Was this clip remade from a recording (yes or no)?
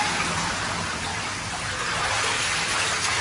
no